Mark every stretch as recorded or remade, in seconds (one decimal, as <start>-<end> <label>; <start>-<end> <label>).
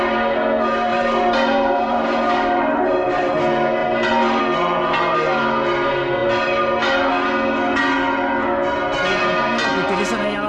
0.0-0.9 recorded; 0.9-3.3 remade; 3.3-3.8 recorded; 3.8-4.4 remade; 4.4-10.5 recorded